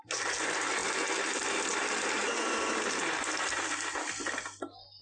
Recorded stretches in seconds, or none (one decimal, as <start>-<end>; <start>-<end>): 0.0-5.0